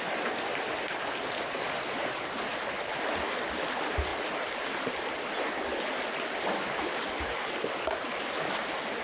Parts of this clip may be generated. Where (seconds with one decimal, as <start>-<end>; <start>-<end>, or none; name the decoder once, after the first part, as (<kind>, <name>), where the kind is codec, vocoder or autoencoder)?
4.1-4.9 (vocoder, BigVGAN v2)